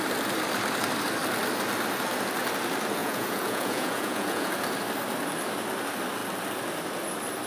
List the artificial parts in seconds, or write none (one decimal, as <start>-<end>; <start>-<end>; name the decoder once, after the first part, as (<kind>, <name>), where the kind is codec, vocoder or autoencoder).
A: 3.0-4.5 (vocoder, Vocos)